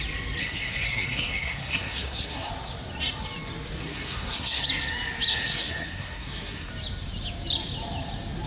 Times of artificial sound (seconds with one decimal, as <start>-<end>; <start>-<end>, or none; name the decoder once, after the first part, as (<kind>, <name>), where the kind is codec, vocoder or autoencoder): 0.4-2.5 (codec, SNAC); 3.8-4.6; 5.3-6.7